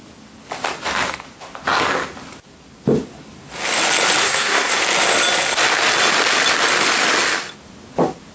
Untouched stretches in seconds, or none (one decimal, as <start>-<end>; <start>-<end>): 0.0-4.2; 4.8-8.3